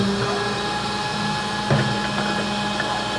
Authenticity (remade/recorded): recorded